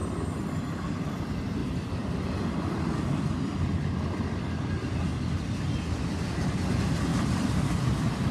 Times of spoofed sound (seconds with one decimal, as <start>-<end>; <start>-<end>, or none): 1.6-3.3; 7.1-7.6